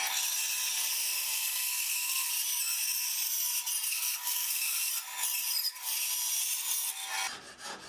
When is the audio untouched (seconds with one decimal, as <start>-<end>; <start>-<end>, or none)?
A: 0.0-0.9; 2.3-3.9; 4.9-7.9